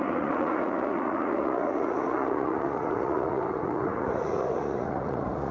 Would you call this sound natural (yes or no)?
no